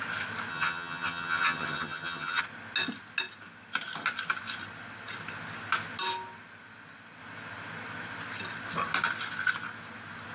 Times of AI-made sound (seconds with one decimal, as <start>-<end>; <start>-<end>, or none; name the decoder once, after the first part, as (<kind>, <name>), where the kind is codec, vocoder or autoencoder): 0.5-2.4 (vocoder, HiFi-GAN)